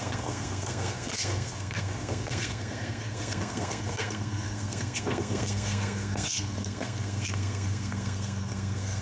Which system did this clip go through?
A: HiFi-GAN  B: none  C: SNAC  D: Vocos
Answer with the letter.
C